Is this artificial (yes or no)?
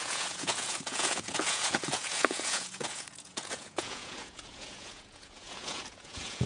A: yes